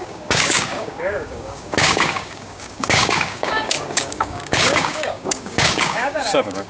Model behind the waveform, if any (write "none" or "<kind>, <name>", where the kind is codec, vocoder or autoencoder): codec, DAC